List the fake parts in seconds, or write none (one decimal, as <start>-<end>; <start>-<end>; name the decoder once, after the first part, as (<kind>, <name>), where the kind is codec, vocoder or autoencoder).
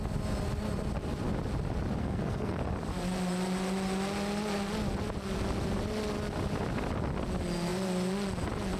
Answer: 2.0-2.6 (codec, SNAC)